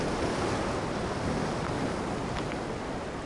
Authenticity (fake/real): real